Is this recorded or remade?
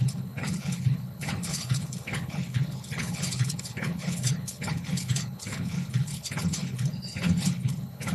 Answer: remade